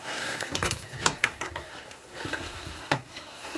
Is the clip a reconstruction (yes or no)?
yes